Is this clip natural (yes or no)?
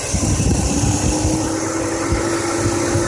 yes